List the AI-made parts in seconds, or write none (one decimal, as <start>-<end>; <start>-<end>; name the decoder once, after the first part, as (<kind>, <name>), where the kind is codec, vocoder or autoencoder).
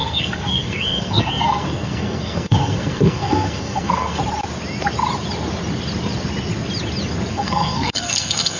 0.0-4.2 (codec, SNAC); 7.3-8.6